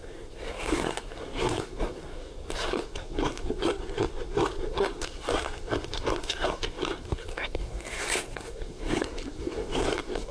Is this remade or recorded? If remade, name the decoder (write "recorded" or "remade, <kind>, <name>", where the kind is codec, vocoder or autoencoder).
remade, codec, SNAC